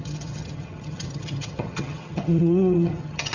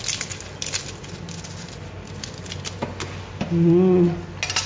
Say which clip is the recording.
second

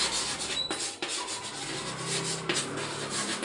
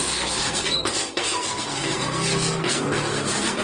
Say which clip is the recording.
first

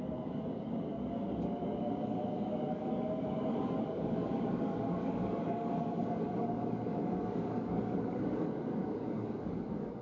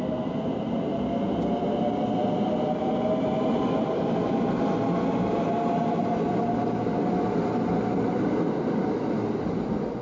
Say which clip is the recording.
second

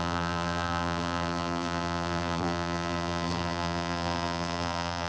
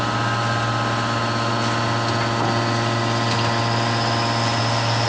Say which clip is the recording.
second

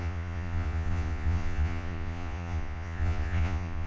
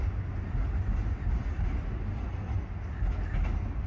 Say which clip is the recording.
second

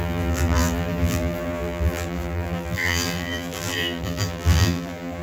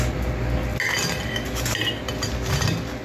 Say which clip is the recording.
second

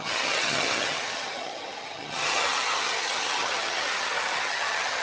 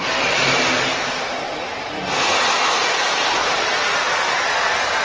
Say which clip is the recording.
second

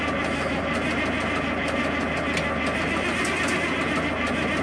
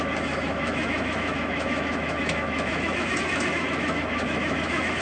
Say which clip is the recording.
first